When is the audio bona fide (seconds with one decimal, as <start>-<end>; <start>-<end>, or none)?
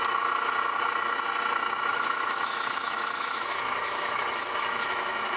0.0-1.9